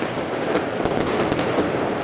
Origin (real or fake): real